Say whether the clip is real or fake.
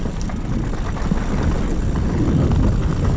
real